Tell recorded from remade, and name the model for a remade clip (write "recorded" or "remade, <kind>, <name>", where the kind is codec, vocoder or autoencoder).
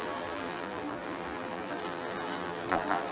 remade, vocoder, BigVGAN v2